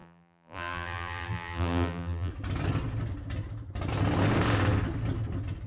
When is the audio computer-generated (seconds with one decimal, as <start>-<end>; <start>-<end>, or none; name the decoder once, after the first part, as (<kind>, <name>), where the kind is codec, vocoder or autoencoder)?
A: 0.0-2.3 (vocoder, BigVGAN v2)